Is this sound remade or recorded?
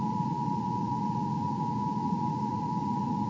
remade